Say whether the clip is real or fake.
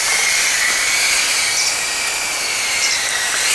real